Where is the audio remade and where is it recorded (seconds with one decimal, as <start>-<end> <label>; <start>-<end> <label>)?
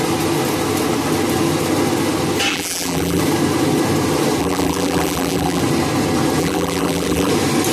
0.0-2.5 recorded; 2.5-3.2 remade; 3.2-4.4 recorded; 4.4-5.6 remade; 5.6-6.4 recorded; 6.4-7.3 remade; 7.3-7.7 recorded